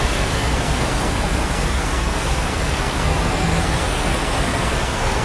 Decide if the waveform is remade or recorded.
remade